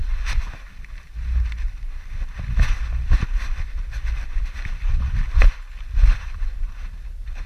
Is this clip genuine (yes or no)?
yes